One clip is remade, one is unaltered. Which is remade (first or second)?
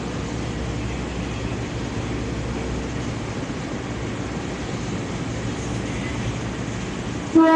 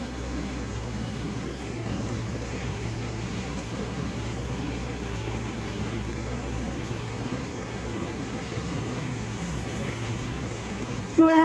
second